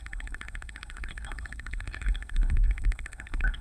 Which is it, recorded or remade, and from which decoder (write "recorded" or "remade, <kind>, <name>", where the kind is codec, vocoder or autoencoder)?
remade, codec, SNAC